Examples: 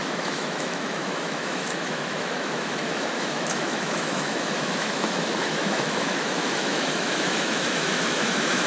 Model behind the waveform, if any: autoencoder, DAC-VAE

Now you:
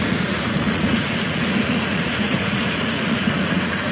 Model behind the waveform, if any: vocoder, Vocos